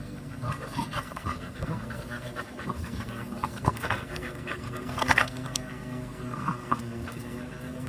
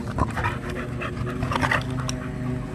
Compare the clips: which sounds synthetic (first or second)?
first